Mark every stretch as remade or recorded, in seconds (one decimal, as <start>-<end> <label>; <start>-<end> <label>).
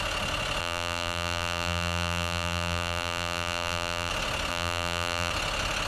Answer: 0.0-0.6 recorded; 0.6-4.1 remade; 4.1-4.5 recorded; 4.5-5.3 remade; 5.3-5.9 recorded